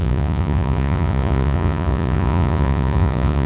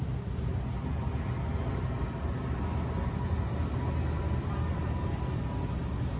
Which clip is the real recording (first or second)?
second